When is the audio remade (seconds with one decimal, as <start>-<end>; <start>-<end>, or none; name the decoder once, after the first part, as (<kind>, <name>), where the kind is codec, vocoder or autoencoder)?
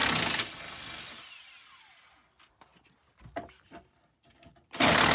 none